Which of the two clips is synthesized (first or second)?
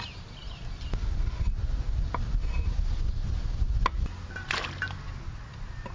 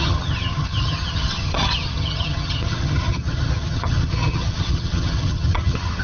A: second